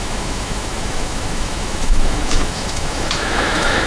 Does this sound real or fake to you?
fake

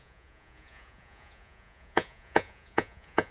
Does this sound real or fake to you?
fake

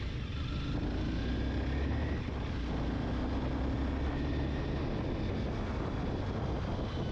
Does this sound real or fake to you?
real